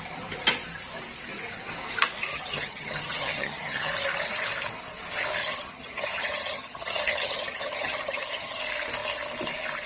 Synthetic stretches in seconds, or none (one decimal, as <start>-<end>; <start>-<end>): 2.3-3.9; 5.4-8.6

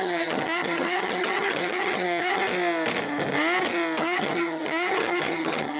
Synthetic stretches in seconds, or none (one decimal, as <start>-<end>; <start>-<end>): 0.0-2.4; 4.0-5.8

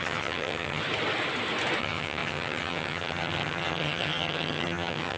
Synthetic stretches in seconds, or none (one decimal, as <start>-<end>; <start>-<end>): 0.0-0.8; 1.8-5.2